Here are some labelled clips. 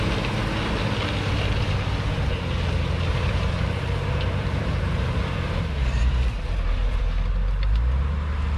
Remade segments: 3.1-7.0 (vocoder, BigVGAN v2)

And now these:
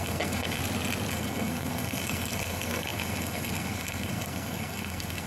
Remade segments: 0.0-0.6 (codec, SNAC); 1.1-5.3

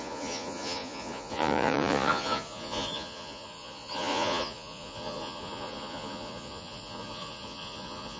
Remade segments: 0.0-8.2 (vocoder, Vocos)

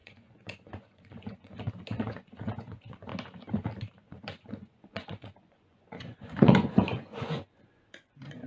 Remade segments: 0.0-3.1 (vocoder, Vocos); 3.8-8.5

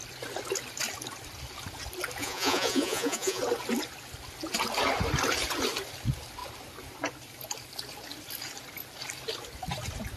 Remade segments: 2.2-3.4 (vocoder, Vocos)

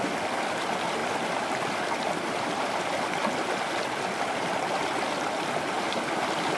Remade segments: none